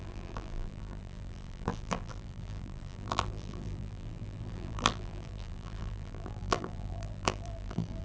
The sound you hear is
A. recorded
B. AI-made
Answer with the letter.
B